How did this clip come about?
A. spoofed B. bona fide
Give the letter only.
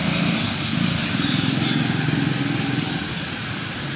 B